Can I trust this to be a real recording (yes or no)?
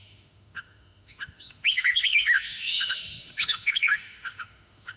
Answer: no